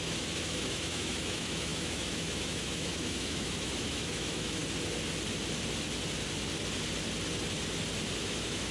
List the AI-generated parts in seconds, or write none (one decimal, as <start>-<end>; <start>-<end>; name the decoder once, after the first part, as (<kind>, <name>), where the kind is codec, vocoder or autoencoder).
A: 0.0-4.6 (autoencoder, DAC-VAE); 8.2-8.7